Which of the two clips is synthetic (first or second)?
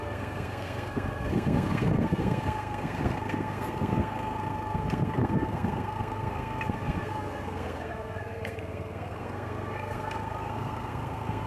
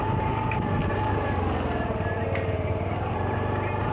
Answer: first